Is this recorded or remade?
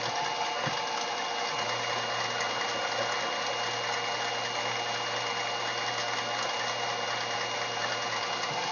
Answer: recorded